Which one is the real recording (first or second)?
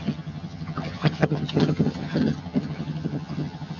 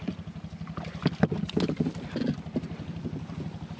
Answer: second